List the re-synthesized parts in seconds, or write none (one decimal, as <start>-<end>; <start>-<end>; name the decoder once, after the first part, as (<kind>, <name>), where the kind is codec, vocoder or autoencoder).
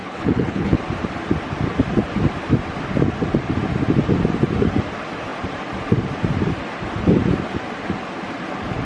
0.0-0.8 (codec, HILCodec)